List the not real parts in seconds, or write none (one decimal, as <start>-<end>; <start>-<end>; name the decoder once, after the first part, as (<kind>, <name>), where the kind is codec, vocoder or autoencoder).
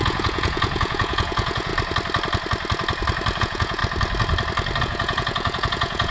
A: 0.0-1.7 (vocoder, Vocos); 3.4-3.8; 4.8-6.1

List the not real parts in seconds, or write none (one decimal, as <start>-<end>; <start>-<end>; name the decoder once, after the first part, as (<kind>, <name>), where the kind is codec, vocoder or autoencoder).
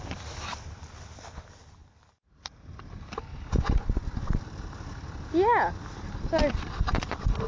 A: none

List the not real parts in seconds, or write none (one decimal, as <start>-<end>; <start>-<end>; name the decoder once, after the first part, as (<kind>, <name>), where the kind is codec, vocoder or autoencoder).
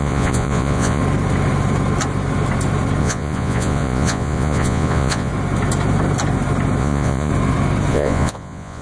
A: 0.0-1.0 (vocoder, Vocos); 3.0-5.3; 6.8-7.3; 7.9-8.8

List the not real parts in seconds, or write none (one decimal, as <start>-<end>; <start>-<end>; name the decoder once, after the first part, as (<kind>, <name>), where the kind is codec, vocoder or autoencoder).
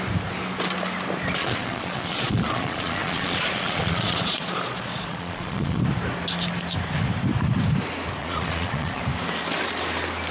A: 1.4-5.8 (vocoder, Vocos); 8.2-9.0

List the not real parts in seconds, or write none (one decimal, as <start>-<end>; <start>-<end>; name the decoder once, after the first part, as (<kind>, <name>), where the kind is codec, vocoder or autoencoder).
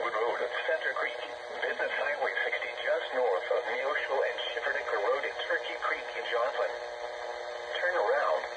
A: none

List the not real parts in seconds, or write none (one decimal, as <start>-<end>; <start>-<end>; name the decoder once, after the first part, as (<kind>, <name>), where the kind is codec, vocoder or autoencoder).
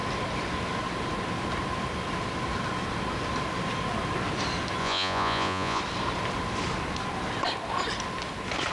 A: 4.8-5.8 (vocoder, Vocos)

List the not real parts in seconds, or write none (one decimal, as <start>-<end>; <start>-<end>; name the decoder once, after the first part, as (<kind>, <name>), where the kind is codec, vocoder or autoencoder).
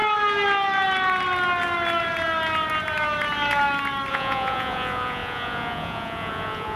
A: 4.1-6.8 (vocoder, Vocos)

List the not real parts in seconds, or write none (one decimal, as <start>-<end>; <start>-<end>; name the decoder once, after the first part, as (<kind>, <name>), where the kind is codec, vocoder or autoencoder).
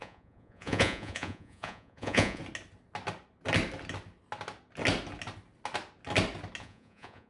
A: 0.0-2.4 (vocoder, Vocos); 6.6-7.3